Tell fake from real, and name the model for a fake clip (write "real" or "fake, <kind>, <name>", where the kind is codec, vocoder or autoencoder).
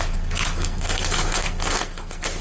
fake, codec, SNAC